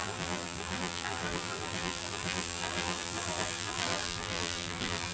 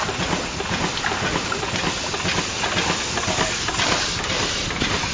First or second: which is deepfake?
first